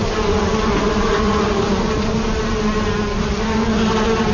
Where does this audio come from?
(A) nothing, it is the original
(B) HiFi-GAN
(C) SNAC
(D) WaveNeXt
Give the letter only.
A